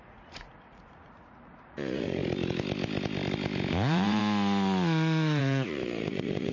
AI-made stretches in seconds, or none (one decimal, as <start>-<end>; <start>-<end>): 0.0-2.2; 3.7-4.2; 5.4-6.5